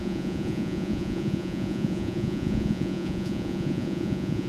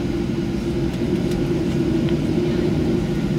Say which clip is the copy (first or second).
first